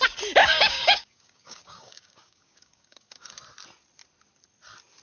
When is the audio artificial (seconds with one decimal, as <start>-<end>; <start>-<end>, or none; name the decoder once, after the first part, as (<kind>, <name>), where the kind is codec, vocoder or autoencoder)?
0.4-3.4 (codec, DAC)